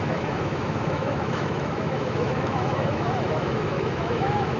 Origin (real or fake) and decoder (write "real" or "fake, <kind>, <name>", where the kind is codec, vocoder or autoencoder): fake, autoencoder, DAC-VAE